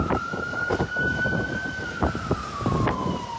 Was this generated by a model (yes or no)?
yes